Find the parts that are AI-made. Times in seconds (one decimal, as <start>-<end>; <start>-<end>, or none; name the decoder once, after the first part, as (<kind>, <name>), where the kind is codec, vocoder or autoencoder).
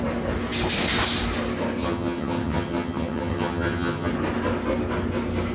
1.8-4.1 (vocoder, HiFi-GAN)